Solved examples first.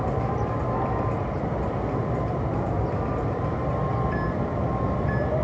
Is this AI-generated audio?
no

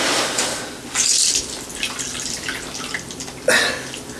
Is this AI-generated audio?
no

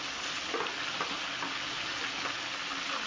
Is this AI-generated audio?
no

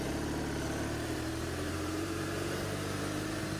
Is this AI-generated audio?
yes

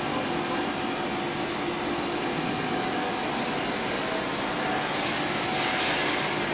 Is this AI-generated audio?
no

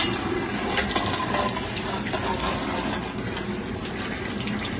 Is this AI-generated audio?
no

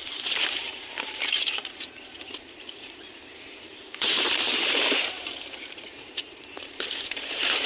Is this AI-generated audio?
yes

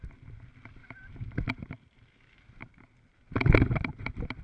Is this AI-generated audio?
no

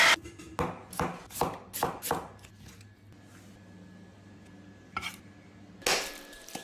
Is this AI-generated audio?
no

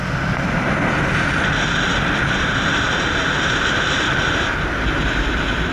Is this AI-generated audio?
no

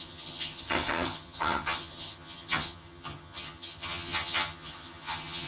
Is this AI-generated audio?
yes